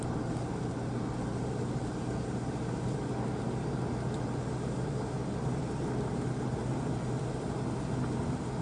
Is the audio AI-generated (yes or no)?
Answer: no